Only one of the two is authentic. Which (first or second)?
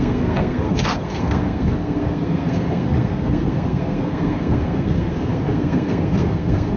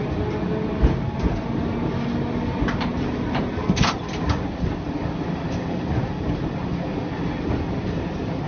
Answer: second